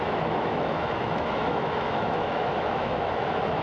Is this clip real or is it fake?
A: fake